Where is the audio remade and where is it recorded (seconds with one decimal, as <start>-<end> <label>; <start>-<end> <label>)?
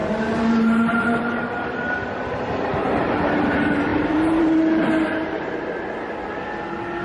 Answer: 0.0-1.2 remade; 1.2-3.9 recorded; 3.9-4.9 remade; 4.9-7.0 recorded